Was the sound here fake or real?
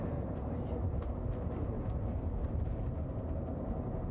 real